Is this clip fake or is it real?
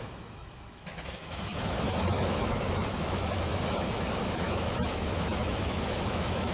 fake